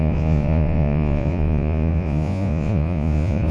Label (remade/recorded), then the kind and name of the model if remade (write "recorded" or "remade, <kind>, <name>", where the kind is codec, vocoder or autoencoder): remade, vocoder, Vocos